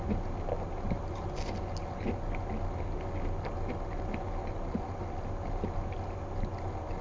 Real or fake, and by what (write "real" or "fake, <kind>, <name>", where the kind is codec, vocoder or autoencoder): real